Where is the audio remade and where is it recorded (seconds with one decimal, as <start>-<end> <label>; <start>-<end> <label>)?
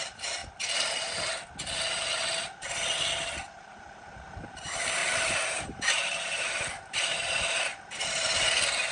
0.0-0.4 remade; 0.4-4.4 recorded; 4.4-5.0 remade; 5.0-5.6 recorded; 5.6-7.7 remade; 7.7-8.9 recorded